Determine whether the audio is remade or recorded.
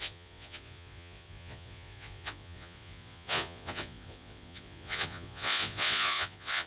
remade